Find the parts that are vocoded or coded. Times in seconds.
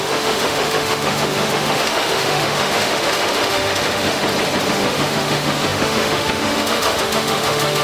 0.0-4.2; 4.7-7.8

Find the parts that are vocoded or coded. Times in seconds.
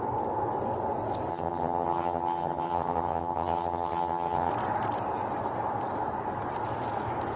1.3-4.5